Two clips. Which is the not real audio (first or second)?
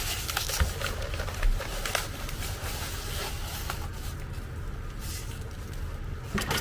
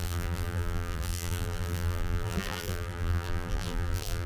second